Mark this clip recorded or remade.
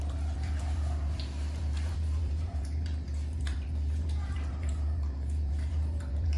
remade